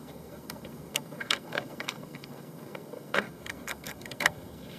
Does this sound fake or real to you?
fake